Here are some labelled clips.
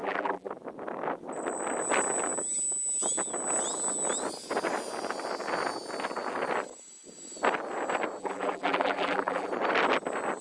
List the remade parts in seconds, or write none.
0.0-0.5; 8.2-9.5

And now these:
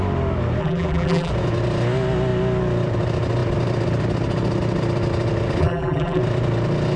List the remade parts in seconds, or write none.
0.6-1.3; 5.6-6.2

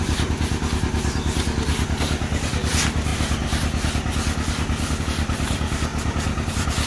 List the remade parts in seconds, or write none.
0.0-3.1; 5.0-5.9; 6.5-6.9